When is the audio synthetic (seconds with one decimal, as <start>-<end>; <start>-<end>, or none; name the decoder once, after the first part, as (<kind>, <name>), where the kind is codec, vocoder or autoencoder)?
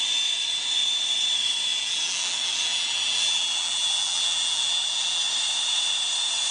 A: 1.7-5.2 (vocoder, BigVGAN v2)